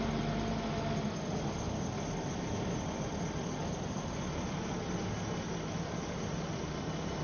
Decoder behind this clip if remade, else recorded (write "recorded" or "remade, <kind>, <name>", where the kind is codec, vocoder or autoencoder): recorded